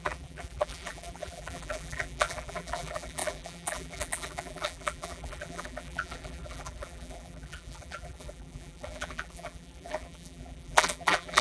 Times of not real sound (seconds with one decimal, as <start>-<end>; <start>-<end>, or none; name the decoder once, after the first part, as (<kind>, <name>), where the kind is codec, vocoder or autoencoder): 0.0-11.4 (vocoder, BigVGAN v2)